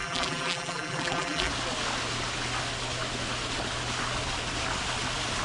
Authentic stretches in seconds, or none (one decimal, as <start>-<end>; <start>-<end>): 1.5-5.4